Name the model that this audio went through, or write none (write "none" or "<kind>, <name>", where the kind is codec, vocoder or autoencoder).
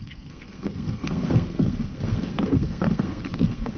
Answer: codec, SNAC